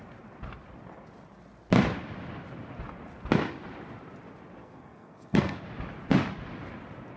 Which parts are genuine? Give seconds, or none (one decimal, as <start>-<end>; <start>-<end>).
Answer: 0.0-4.6; 5.6-7.2